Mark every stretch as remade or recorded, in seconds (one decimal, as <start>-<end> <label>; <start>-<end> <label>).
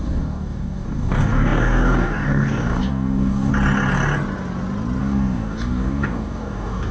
0.0-3.5 remade; 3.5-5.0 recorded; 5.0-6.9 remade